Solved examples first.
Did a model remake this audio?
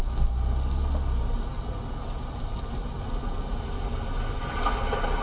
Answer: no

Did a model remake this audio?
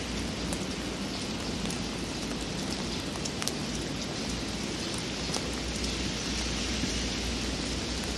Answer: no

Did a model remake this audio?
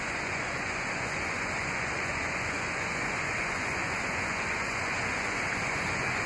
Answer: yes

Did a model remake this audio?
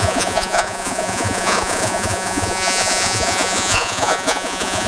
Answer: yes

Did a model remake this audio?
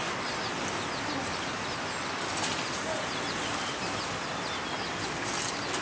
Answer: no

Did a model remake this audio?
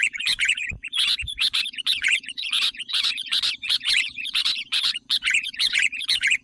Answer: yes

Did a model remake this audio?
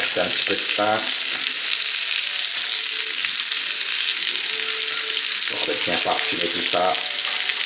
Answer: no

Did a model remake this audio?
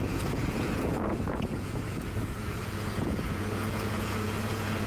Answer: yes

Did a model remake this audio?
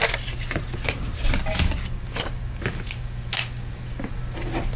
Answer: no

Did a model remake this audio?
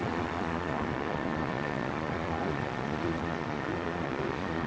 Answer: yes